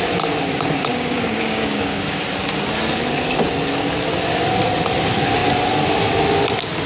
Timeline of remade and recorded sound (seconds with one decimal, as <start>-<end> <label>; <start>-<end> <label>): 0.0-0.9 recorded; 0.9-2.2 remade; 2.2-6.9 recorded